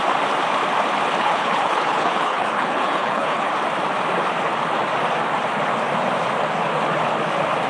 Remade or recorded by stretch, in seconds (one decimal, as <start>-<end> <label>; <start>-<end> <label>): 0.0-1.2 recorded; 1.2-3.5 remade; 3.5-7.7 recorded